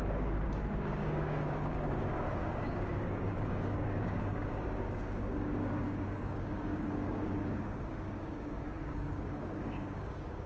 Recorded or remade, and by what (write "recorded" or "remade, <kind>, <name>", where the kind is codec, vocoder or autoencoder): remade, codec, DAC